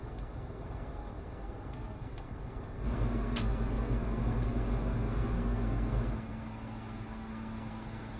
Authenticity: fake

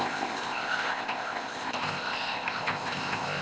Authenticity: fake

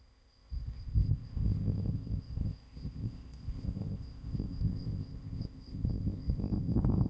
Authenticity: fake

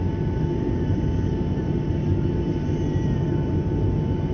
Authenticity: real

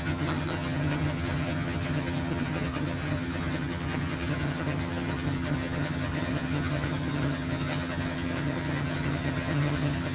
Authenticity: fake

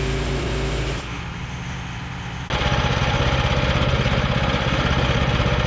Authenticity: real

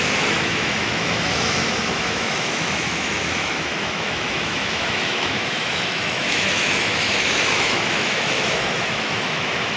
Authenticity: fake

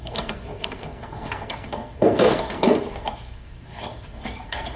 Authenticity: fake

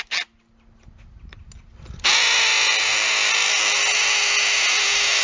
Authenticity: real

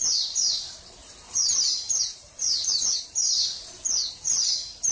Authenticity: fake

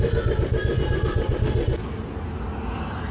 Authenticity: real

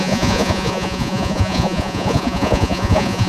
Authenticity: fake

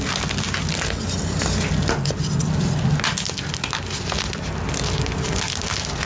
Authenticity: real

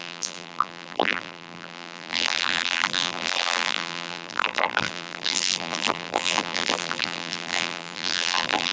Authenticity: fake